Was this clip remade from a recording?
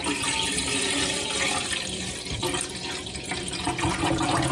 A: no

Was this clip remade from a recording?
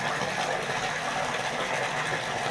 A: no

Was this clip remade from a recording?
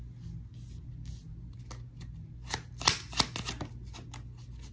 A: no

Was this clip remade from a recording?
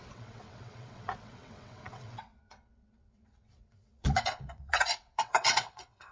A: yes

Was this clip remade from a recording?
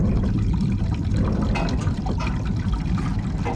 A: no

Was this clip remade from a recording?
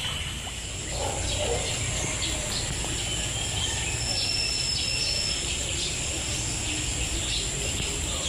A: no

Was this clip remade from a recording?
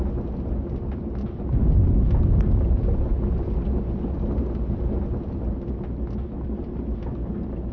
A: no